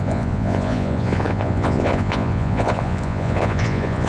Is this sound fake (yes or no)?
yes